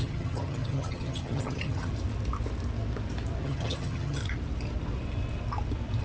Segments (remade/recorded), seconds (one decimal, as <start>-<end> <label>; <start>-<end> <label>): 0.0-1.9 remade; 1.9-3.4 recorded; 3.4-4.2 remade; 4.2-6.0 recorded